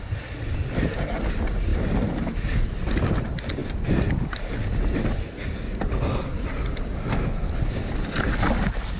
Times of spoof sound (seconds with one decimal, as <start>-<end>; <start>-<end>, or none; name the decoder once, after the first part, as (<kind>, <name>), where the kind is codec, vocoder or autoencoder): none